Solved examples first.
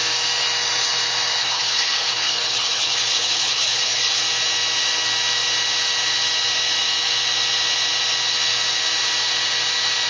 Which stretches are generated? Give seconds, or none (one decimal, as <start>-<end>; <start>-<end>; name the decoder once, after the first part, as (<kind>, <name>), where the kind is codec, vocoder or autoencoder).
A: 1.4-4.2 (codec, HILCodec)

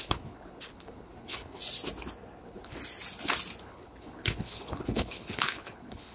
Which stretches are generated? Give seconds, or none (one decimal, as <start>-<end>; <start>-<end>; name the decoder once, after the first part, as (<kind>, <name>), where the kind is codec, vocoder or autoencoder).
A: 0.0-1.6 (codec, HILCodec); 2.4-2.8; 3.6-6.1

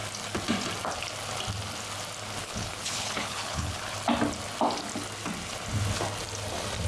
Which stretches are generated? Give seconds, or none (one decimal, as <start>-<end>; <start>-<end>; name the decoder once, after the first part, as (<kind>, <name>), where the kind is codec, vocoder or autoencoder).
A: 2.4-3.8 (codec, HILCodec)